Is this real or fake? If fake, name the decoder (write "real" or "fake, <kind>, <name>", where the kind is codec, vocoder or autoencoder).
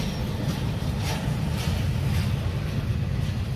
real